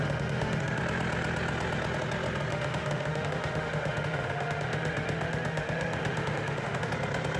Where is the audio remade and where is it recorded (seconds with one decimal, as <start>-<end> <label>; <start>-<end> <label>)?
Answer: 0.0-0.8 remade; 0.8-2.5 recorded; 2.5-6.9 remade; 6.9-7.4 recorded